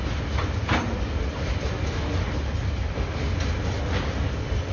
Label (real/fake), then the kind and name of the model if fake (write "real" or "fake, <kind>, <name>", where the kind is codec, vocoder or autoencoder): real